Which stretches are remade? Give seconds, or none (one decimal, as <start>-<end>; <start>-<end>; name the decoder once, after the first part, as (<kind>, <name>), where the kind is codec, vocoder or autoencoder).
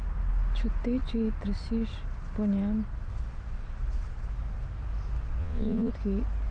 5.4-5.9 (vocoder, Vocos)